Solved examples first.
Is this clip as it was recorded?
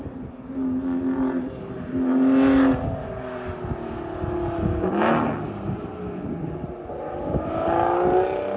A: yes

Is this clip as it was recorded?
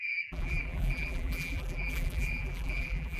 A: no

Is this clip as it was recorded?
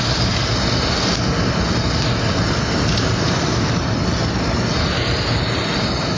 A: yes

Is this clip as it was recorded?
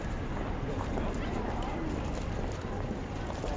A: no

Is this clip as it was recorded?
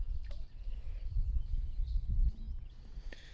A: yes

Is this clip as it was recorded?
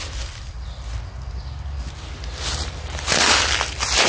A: yes